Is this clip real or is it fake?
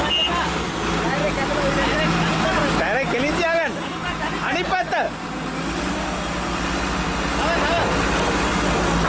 real